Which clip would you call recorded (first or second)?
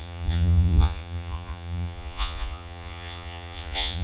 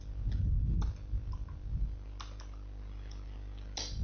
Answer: second